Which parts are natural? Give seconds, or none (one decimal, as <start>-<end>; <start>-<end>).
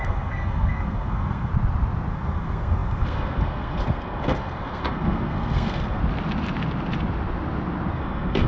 1.5-2.1; 6.0-7.9